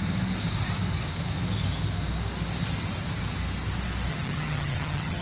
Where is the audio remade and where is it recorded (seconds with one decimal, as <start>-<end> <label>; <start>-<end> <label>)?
0.0-4.1 recorded; 4.1-5.2 remade